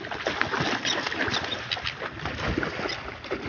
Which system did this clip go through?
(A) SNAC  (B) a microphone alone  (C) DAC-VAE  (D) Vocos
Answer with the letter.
B